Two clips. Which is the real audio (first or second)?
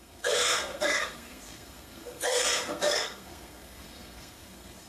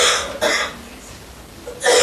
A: second